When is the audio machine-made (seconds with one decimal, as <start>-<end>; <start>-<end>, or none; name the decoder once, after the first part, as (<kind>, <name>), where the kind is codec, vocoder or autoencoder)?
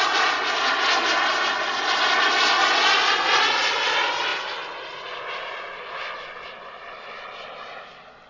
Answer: none